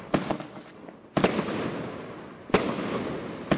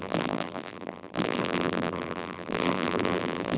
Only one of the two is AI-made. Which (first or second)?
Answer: second